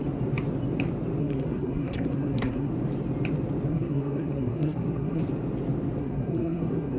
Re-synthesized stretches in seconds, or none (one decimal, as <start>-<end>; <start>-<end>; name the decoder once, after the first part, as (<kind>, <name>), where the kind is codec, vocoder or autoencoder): 1.2-2.7 (codec, SNAC); 3.7-5.2; 6.0-7.0